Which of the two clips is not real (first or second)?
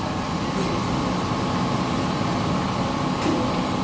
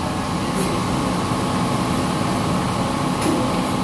first